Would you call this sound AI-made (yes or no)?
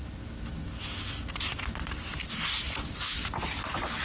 no